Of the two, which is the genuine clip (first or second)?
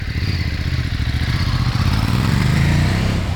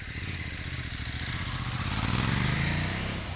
second